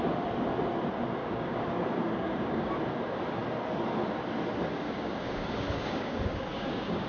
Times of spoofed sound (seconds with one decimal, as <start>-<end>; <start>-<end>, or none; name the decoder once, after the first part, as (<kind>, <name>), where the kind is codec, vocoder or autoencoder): 1.2-2.8 (codec, DAC); 4.7-7.1